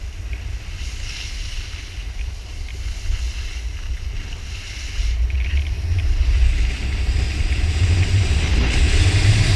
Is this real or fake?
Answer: real